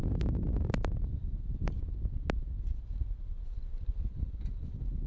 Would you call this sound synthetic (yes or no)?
no